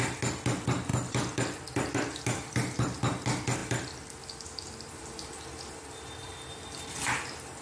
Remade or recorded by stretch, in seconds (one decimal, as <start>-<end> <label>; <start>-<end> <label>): 0.0-7.6 recorded